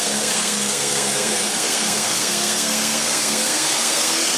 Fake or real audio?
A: fake